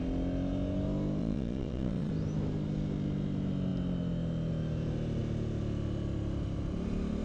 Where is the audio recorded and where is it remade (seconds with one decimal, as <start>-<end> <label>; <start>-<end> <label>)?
0.0-1.2 recorded; 1.2-2.1 remade; 2.1-7.2 recorded